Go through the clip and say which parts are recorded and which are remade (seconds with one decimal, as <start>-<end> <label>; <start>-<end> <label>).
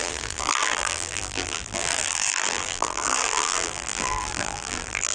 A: 0.0-5.1 remade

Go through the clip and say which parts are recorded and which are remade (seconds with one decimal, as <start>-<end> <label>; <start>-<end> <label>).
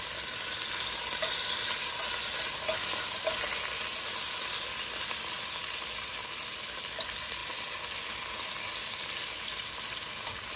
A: 0.0-10.6 recorded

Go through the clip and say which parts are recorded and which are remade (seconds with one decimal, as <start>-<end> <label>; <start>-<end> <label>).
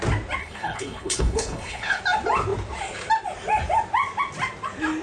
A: 0.0-0.4 recorded; 0.4-2.0 remade; 2.0-5.0 recorded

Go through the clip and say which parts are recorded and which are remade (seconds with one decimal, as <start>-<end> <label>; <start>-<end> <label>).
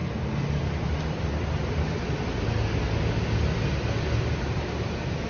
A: 0.0-5.3 recorded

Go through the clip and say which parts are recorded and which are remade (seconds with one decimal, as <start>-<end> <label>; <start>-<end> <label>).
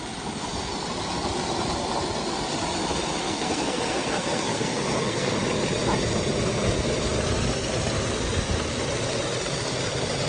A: 0.0-3.2 recorded; 3.2-5.4 remade; 5.4-10.3 recorded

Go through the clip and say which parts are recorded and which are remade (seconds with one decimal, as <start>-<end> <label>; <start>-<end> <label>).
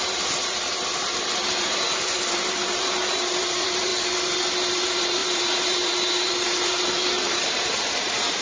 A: 0.0-3.9 remade; 3.9-4.7 recorded; 4.7-8.4 remade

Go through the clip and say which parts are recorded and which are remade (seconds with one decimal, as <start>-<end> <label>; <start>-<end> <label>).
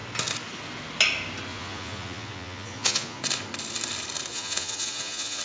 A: 0.0-1.5 recorded; 1.5-3.2 remade; 3.2-4.3 recorded; 4.3-5.4 remade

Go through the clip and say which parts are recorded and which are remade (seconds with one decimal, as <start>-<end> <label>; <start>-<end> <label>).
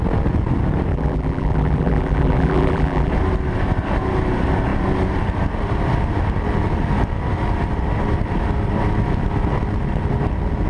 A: 0.0-0.9 recorded; 0.9-3.1 remade; 3.1-10.7 recorded